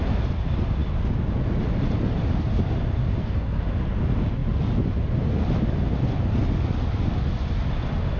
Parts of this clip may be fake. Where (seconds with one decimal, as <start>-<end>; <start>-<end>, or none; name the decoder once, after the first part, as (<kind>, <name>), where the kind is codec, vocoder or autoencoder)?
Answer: 3.0-3.6 (codec, SNAC)